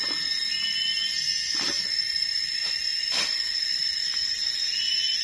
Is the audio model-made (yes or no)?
no